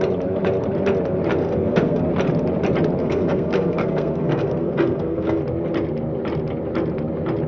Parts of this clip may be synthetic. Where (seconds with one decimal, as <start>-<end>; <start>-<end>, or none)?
1.4-2.0; 3.0-5.4